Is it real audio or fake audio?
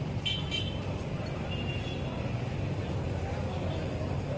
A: real